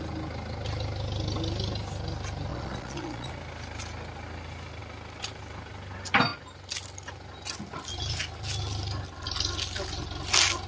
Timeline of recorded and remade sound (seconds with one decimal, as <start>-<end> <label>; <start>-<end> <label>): 0.0-2.5 recorded; 2.5-3.3 remade; 3.3-10.7 recorded